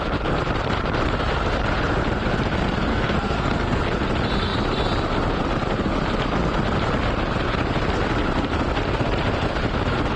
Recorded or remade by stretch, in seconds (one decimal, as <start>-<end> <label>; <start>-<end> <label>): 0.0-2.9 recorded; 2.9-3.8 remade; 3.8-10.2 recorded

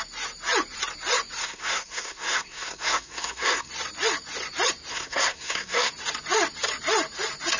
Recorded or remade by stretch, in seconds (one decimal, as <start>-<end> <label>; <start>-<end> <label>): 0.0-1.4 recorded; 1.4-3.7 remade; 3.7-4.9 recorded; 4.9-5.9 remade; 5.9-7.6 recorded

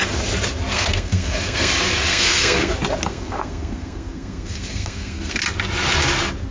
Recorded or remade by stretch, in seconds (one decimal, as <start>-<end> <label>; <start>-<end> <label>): 0.0-0.7 recorded; 0.7-1.7 remade; 1.7-2.1 recorded; 2.1-2.7 remade; 2.7-3.1 recorded; 3.1-5.4 remade; 5.4-6.5 recorded

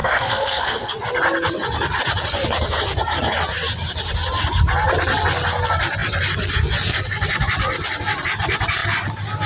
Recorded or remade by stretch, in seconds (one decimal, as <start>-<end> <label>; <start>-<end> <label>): 0.0-0.9 remade; 0.9-9.5 recorded

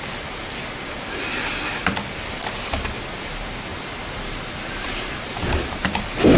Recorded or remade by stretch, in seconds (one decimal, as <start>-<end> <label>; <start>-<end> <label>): 0.0-6.4 recorded

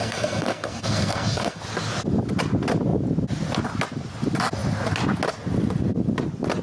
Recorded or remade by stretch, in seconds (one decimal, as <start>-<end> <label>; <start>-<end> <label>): 0.0-1.6 remade; 1.6-6.6 recorded